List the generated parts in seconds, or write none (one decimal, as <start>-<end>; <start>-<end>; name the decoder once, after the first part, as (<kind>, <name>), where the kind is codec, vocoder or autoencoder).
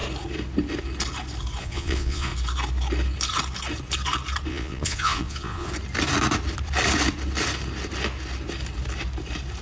1.6-2.3 (vocoder, Vocos); 4.5-5.7